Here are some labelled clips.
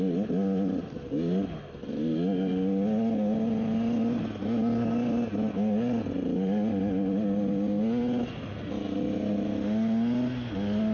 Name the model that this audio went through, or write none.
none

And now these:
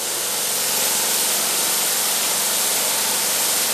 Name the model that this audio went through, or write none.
none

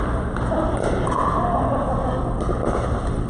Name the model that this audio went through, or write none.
none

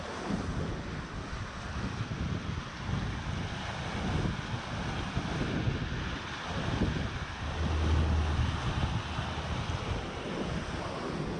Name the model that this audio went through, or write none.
none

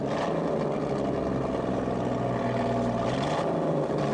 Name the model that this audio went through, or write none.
none